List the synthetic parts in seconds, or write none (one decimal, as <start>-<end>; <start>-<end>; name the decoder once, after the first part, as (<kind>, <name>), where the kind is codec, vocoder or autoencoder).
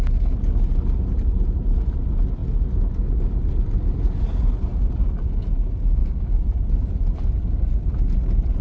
none